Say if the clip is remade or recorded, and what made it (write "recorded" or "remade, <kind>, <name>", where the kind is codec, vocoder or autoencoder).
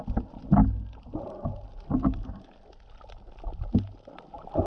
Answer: recorded